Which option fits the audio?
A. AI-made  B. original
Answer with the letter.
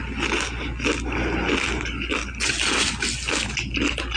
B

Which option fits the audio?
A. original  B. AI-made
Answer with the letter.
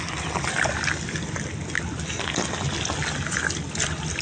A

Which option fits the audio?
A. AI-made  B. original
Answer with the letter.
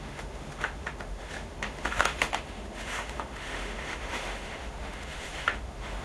A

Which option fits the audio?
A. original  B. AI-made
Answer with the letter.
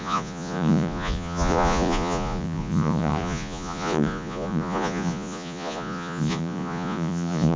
B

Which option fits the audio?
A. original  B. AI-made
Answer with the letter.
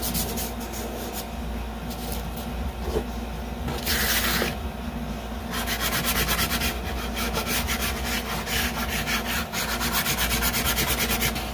A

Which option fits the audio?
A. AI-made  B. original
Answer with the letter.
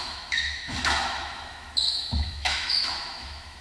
A